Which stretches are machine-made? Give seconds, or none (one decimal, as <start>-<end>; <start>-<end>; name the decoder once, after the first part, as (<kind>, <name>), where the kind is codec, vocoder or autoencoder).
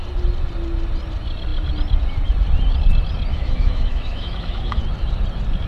3.3-4.8 (autoencoder, DAC-VAE)